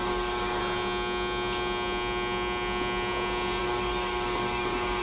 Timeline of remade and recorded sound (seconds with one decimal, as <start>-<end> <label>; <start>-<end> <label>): 0.0-0.6 remade; 0.6-3.6 recorded; 3.6-5.0 remade